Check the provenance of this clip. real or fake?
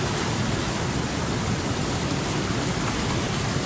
real